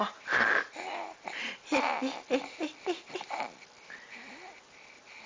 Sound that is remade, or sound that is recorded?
recorded